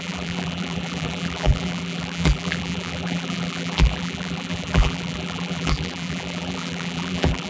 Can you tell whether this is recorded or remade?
remade